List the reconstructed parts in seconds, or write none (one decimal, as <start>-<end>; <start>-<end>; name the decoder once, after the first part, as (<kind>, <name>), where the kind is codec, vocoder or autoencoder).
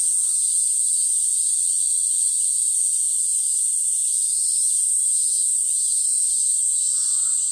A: none